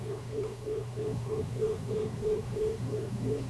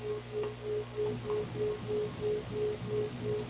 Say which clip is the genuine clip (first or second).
second